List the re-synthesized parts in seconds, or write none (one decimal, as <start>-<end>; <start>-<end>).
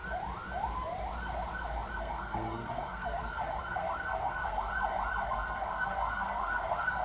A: 2.0-4.7; 5.3-7.0